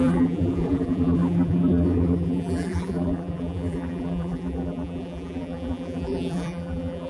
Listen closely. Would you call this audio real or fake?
fake